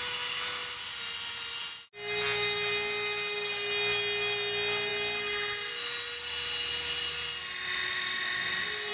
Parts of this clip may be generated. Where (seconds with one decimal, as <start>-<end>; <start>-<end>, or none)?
none